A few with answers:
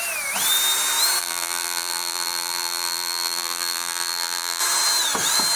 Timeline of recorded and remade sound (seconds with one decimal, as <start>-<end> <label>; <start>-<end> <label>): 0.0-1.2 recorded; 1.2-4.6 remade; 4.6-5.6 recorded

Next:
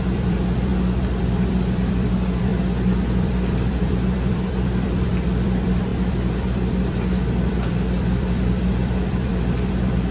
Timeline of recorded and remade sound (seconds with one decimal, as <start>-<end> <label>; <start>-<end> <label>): 0.0-2.5 remade; 2.5-3.1 recorded; 3.1-10.1 remade

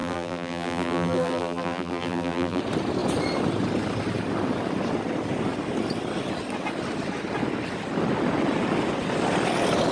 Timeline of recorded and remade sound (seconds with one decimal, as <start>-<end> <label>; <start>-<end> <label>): 0.0-2.6 remade; 2.6-9.9 recorded